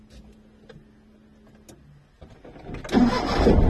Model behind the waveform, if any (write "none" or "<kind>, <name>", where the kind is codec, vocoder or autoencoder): none